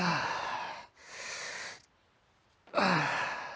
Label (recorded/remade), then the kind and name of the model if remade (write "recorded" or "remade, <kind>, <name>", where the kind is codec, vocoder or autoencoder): recorded